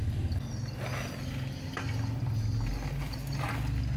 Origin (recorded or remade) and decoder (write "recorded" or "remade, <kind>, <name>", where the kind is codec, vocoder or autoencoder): recorded